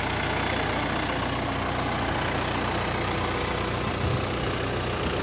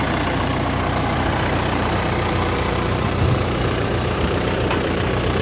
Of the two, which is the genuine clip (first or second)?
first